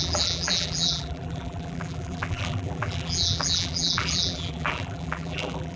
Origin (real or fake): fake